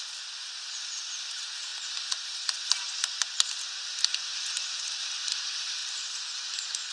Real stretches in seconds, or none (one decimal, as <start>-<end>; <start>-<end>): 0.0-6.9